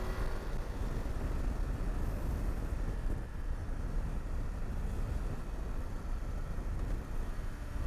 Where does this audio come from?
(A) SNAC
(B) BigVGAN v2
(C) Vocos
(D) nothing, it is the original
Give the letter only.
D